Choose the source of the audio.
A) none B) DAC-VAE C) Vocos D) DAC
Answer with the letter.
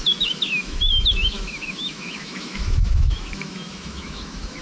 B